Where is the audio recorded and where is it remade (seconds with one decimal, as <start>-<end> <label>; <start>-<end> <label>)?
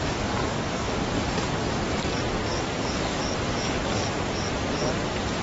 0.0-0.4 recorded; 0.4-1.0 remade; 1.0-2.5 recorded; 2.5-3.2 remade; 3.2-5.4 recorded